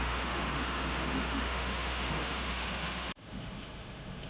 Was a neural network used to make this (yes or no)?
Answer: yes